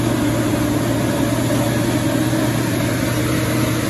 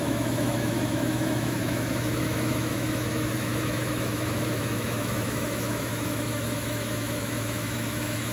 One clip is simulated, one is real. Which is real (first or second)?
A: first